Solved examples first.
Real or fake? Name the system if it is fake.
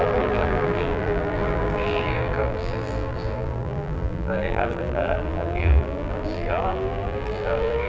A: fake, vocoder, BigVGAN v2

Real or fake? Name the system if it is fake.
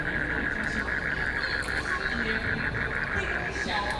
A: real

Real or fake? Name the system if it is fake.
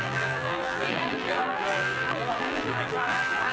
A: fake, vocoder, BigVGAN v2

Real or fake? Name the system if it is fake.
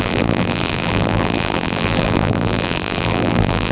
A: fake, vocoder, BigVGAN v2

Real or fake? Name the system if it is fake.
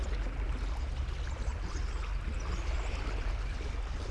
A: real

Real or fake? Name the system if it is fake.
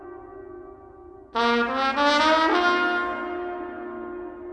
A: real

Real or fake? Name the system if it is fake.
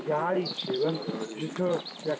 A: fake, vocoder, BigVGAN v2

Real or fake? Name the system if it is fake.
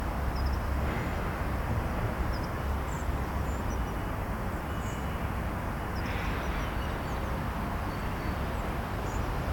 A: real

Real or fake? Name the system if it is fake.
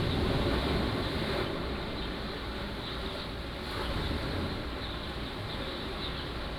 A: real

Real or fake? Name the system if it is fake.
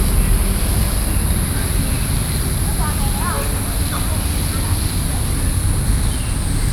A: real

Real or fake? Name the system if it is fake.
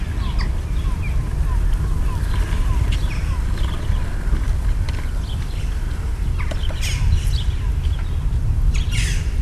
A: real